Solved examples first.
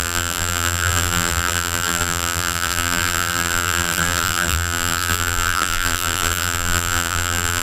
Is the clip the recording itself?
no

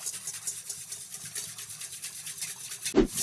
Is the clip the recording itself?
yes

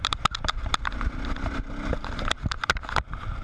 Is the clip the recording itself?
no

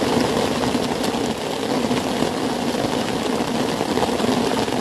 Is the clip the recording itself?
yes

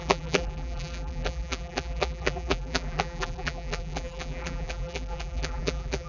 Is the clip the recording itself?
no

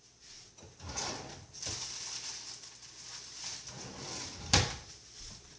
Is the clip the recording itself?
yes